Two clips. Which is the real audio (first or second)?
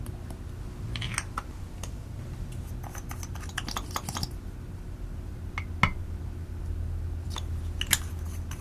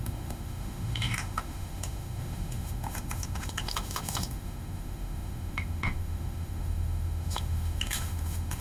first